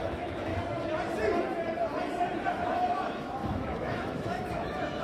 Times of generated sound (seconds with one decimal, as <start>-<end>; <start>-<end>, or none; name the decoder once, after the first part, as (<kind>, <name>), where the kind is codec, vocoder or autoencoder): 0.0-0.5 (autoencoder, DAC-VAE); 2.5-5.0